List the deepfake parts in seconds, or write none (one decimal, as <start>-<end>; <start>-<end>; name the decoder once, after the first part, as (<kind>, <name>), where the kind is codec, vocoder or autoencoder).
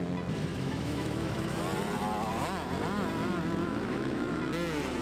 0.5-1.6 (autoencoder, DAC-VAE); 3.6-4.4